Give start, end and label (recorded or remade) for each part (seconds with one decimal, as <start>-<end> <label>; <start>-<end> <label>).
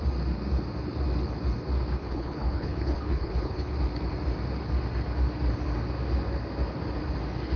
0.0-2.0 recorded; 2.0-3.7 remade; 3.7-7.6 recorded